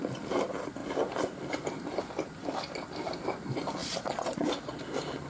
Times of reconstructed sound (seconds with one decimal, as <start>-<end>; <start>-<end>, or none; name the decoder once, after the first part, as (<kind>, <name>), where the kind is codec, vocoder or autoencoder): 3.8-4.8 (vocoder, Vocos)